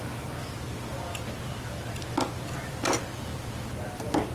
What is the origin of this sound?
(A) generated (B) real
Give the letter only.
B